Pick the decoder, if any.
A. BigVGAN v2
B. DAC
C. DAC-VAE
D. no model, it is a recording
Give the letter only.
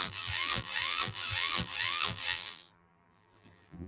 A